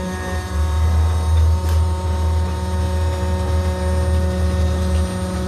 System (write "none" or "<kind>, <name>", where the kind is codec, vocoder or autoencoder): none